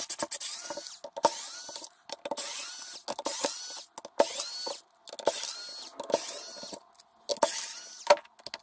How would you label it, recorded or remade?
recorded